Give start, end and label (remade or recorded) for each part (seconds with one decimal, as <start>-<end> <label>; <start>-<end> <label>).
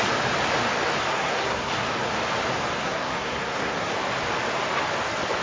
0.0-1.1 recorded; 1.1-1.7 remade; 1.7-2.8 recorded; 2.8-3.9 remade; 3.9-5.4 recorded